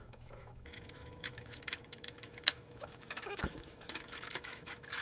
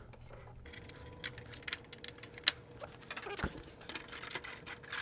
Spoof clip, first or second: first